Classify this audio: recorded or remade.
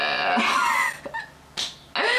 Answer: recorded